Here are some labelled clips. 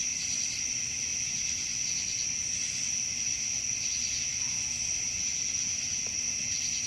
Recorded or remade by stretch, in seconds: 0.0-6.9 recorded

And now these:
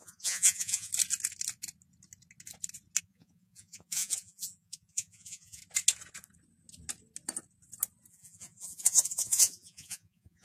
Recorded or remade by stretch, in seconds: 0.0-0.9 remade; 0.9-3.0 recorded; 3.0-5.6 remade; 5.6-8.1 recorded; 8.1-10.4 remade

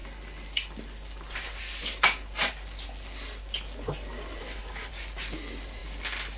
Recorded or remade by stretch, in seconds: 0.0-4.4 recorded; 4.4-4.9 remade; 4.9-6.4 recorded

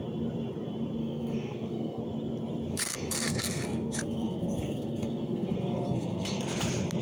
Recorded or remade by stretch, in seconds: 0.0-1.0 recorded; 1.0-2.0 remade; 2.0-2.7 recorded; 2.7-6.4 remade; 6.4-7.0 recorded